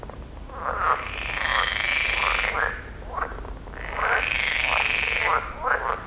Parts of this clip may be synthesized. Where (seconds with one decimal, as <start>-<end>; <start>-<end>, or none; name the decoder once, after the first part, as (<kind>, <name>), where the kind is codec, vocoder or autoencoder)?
none